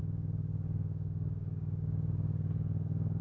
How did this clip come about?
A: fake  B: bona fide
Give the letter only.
A